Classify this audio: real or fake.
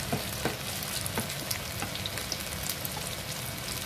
real